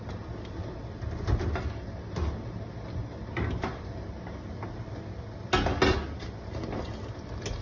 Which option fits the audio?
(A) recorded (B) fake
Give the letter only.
A